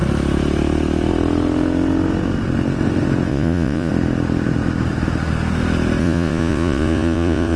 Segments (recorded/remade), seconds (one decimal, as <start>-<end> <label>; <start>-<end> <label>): 0.0-3.3 recorded; 3.3-3.9 remade; 3.9-6.0 recorded; 6.0-7.6 remade